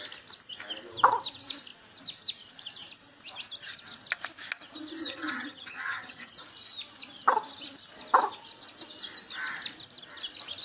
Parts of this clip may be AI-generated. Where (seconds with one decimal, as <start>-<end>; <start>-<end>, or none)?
5.0-6.3

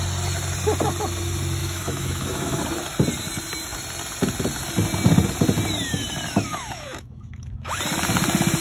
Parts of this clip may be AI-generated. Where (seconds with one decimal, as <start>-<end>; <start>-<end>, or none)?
1.6-2.6; 6.5-7.8

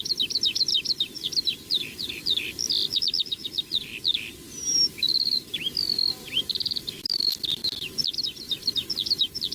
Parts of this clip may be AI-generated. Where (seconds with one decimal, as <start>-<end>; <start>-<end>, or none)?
0.0-3.9; 4.9-9.5

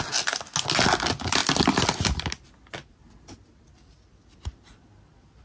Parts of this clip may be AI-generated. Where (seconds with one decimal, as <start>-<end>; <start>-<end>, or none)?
none

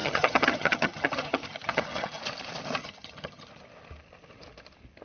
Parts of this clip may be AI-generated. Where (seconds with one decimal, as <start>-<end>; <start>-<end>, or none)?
0.0-2.2; 2.8-3.5

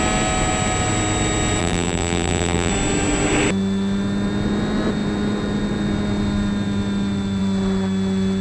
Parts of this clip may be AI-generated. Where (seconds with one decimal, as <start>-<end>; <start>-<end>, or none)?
1.6-2.7

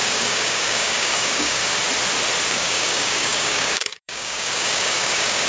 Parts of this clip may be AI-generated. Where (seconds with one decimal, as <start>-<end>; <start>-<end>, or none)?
0.0-1.6; 2.5-5.5